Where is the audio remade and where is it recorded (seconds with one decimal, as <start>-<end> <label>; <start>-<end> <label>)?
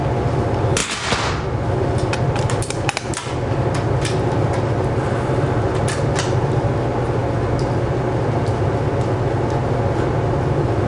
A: 0.0-10.9 recorded